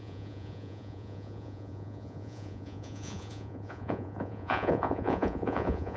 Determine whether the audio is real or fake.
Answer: fake